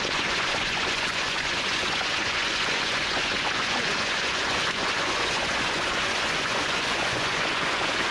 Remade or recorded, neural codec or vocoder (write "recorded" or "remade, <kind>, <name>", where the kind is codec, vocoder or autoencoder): remade, vocoder, Vocos